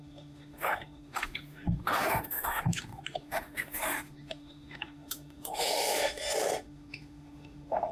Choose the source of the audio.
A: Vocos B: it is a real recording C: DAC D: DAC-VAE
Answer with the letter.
D